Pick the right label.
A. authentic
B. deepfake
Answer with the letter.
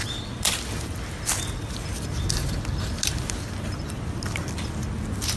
A